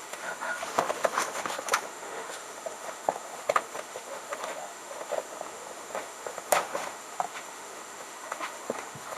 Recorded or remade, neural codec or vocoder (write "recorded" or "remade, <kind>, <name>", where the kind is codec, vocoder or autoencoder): remade, autoencoder, DAC-VAE